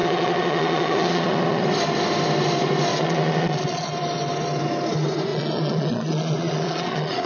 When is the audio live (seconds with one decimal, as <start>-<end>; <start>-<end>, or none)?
1.6-2.9; 3.9-5.3